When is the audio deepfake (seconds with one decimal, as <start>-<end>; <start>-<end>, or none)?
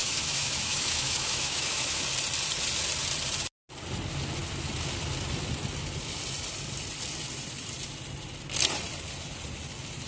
0.0-2.0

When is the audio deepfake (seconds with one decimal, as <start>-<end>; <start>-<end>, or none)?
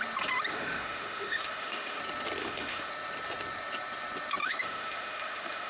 0.5-2.0; 2.4-2.9; 4.4-5.7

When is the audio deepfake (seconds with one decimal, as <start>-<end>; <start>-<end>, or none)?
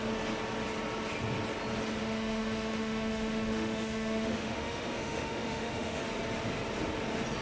2.0-6.0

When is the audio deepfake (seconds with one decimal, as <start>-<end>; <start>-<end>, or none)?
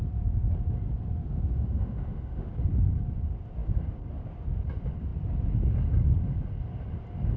1.3-2.5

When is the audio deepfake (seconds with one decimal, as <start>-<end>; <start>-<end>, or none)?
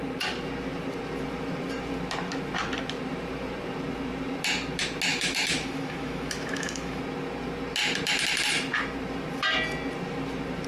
5.1-7.0